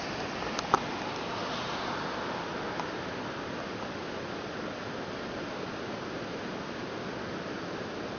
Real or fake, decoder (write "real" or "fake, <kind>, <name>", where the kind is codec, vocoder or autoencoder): real